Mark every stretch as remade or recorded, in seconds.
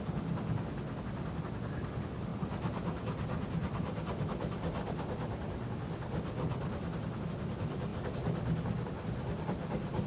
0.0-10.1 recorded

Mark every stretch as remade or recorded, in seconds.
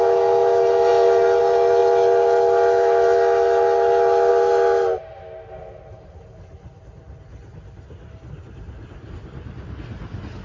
0.0-10.4 recorded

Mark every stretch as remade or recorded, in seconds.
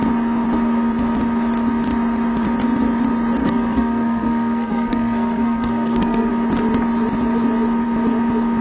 0.0-3.4 recorded; 3.4-6.3 remade; 6.3-8.6 recorded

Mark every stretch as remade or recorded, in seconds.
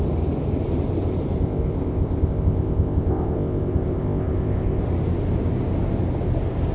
0.0-1.4 recorded; 1.4-4.8 remade; 4.8-6.7 recorded